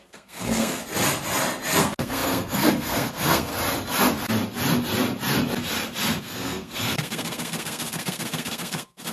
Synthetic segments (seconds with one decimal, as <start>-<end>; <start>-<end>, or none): 0.0-0.8; 1.8-3.5; 6.2-9.1